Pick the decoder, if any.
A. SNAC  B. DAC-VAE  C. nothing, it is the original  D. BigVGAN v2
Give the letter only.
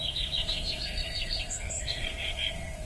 A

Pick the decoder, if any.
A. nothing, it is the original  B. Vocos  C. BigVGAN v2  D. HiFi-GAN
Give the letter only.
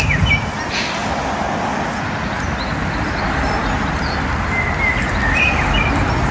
A